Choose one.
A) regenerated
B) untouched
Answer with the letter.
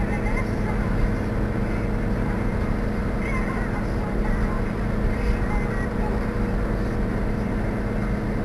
B